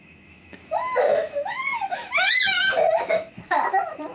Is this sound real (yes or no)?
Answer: no